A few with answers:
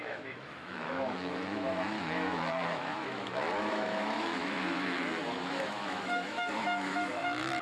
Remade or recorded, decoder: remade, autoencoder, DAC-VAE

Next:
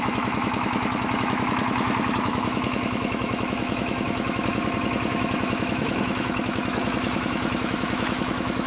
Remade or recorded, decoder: remade, autoencoder, DAC-VAE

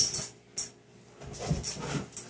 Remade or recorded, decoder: recorded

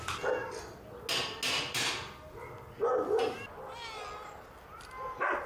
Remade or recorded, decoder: recorded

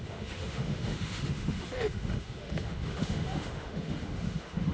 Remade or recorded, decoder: remade, autoencoder, DAC-VAE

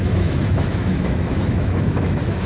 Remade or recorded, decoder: remade, autoencoder, DAC-VAE